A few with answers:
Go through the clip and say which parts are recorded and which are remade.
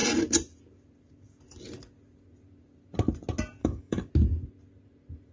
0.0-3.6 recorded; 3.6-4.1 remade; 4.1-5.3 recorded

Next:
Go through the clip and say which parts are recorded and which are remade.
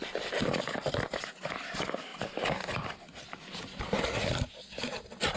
0.0-5.4 recorded